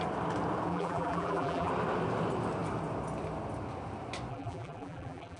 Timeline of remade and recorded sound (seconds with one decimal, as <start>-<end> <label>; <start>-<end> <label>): 0.0-0.7 recorded; 0.7-1.7 remade; 1.7-4.3 recorded; 4.3-5.4 remade

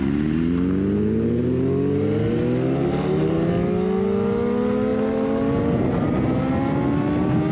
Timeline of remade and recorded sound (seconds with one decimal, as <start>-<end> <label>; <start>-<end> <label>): 0.0-2.8 recorded; 2.8-3.5 remade; 3.5-4.9 recorded; 4.9-6.5 remade; 6.5-7.5 recorded

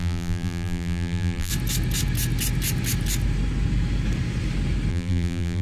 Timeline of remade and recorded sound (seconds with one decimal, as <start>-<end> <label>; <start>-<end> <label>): 0.0-1.5 remade; 1.5-4.9 recorded; 4.9-5.6 remade

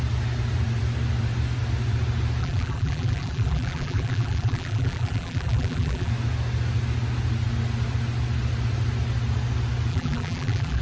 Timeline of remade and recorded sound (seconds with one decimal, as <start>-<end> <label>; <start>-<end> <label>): 0.0-2.4 recorded; 2.4-6.1 remade; 6.1-9.9 recorded; 9.9-10.8 remade